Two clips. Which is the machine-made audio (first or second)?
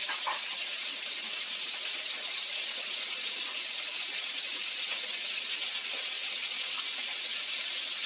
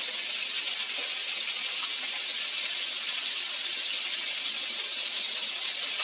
first